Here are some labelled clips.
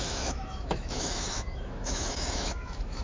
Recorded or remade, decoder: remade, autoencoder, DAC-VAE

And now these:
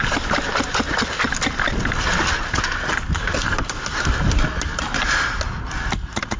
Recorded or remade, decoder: recorded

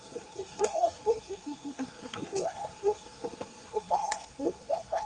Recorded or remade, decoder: remade, codec, SNAC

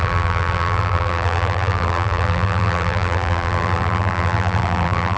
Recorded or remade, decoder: remade, vocoder, BigVGAN v2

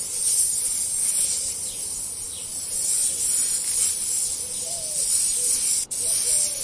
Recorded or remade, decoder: remade, vocoder, BigVGAN v2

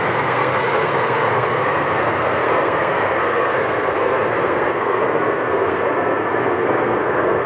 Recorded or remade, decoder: remade, codec, SNAC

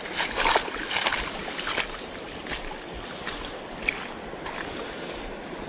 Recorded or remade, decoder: recorded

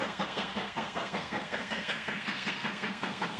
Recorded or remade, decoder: remade, codec, SNAC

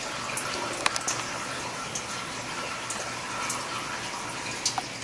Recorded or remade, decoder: recorded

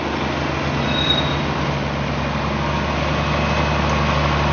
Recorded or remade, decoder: recorded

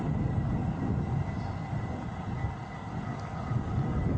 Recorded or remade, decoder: recorded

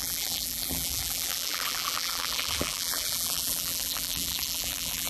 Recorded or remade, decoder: remade, vocoder, BigVGAN v2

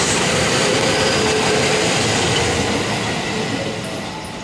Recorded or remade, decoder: recorded